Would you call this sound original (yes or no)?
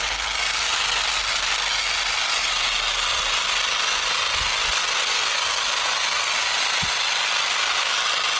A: yes